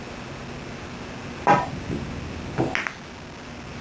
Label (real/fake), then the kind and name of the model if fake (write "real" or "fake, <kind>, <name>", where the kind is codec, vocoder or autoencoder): real